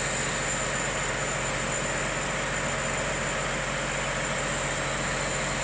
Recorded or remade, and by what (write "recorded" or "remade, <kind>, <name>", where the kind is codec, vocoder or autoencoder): recorded